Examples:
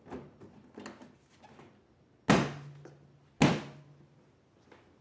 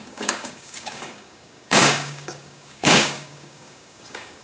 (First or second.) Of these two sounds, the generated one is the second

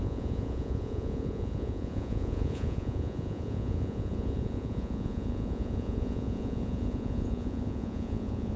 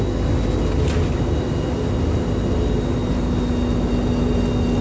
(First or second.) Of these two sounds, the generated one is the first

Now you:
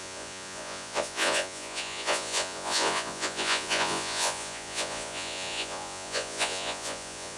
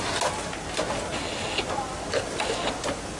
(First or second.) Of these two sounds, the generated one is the first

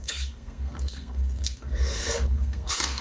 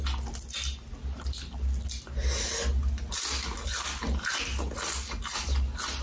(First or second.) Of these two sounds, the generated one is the first